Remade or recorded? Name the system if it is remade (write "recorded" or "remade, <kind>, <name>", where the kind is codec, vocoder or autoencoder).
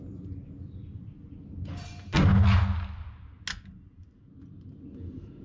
recorded